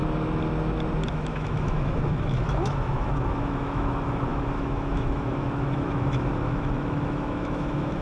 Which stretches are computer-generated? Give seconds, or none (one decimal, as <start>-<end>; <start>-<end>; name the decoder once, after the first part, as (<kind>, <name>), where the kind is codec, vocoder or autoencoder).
1.1-8.0 (autoencoder, DAC-VAE)